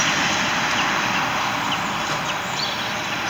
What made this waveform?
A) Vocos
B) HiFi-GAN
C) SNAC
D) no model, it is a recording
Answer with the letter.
D